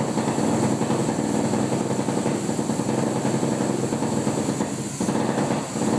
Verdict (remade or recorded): recorded